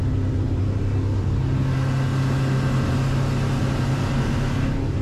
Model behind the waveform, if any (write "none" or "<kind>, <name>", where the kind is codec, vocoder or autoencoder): none